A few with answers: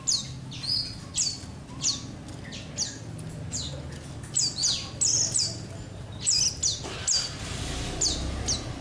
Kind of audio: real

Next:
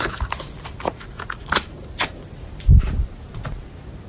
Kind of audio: real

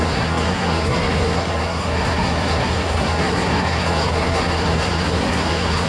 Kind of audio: fake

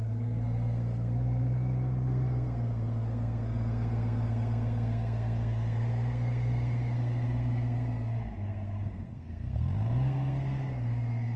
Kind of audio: fake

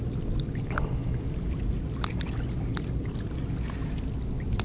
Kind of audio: real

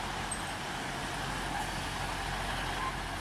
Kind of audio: real